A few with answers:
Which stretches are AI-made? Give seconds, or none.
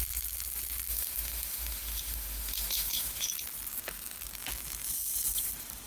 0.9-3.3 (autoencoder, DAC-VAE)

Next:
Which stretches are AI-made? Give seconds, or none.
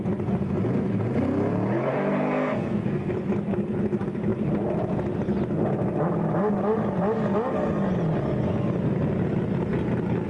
1.9-3.1 (codec, SNAC)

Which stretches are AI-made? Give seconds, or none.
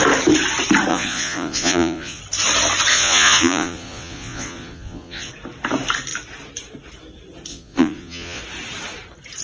0.9-2.2 (vocoder, Vocos); 2.9-5.3; 7.5-8.4